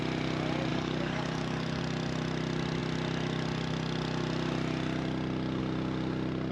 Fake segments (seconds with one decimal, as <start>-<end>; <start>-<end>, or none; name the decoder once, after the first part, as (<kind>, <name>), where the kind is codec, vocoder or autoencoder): 0.7-1.8 (codec, DAC)